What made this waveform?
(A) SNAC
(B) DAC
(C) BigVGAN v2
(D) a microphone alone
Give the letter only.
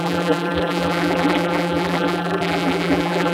C